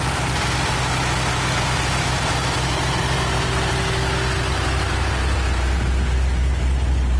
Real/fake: real